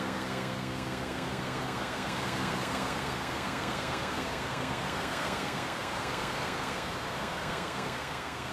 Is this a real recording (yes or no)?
no